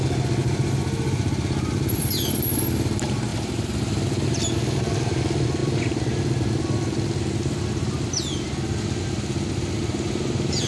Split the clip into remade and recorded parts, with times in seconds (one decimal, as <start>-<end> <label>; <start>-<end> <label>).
0.0-0.4 recorded; 0.4-2.6 remade; 2.6-3.3 recorded; 3.3-3.8 remade; 3.8-10.7 recorded